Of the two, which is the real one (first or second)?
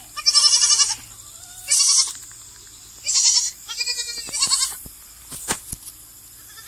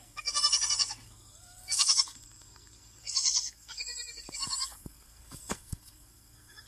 first